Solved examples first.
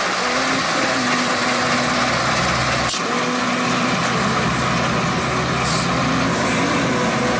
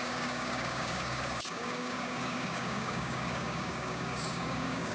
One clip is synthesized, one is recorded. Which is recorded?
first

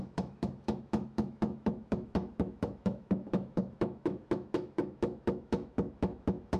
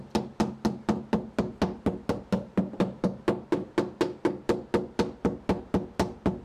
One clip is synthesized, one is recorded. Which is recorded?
second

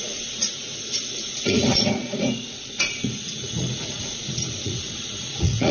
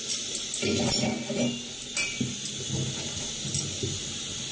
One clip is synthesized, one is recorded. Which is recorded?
second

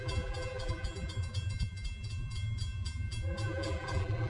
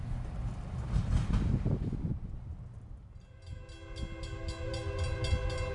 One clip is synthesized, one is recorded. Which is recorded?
second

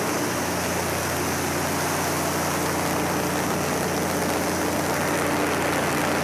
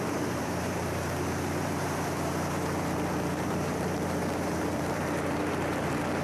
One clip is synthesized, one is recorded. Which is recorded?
first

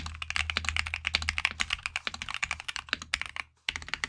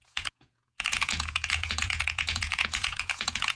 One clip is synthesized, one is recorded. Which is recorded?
first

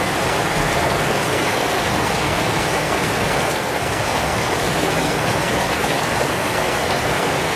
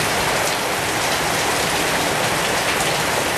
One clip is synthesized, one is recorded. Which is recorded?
second